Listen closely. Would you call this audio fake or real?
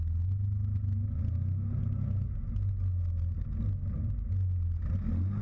real